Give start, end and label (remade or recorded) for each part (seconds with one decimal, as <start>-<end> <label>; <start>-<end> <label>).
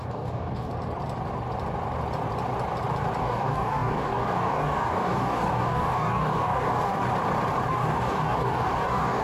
0.0-0.7 remade; 0.7-3.2 recorded; 3.2-7.0 remade; 7.0-7.7 recorded; 7.7-9.2 remade